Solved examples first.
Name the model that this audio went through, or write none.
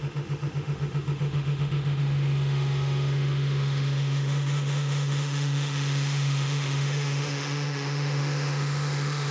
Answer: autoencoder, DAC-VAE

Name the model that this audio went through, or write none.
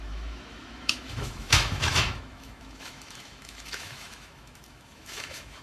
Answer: autoencoder, DAC-VAE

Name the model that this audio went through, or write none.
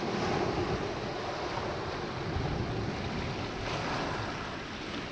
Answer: none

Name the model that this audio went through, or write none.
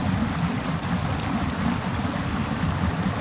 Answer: none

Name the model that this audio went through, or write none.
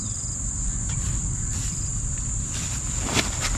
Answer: vocoder, BigVGAN v2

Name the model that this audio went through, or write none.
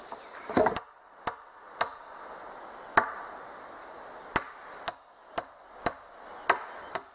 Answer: none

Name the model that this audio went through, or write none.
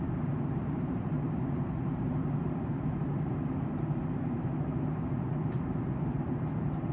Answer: vocoder, BigVGAN v2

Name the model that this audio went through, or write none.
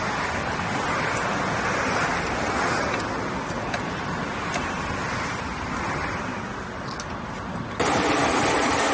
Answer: none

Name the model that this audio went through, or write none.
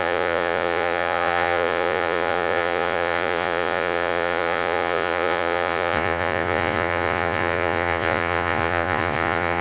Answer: vocoder, Vocos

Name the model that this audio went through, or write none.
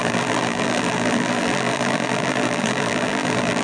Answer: vocoder, BigVGAN v2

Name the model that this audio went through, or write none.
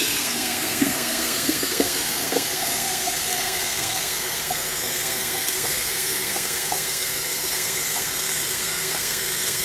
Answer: codec, SNAC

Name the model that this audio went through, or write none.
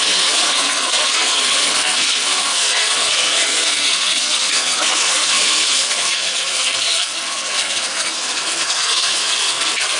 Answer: codec, SNAC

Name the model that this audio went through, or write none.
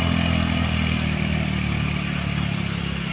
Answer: none